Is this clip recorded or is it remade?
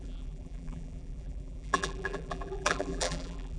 remade